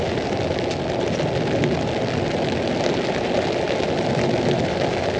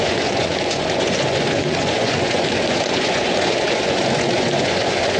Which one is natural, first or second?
first